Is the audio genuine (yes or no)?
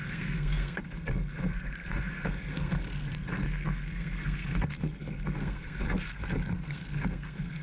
no